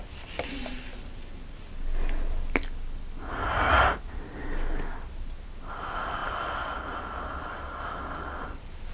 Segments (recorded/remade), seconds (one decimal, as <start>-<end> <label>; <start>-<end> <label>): 0.0-8.9 recorded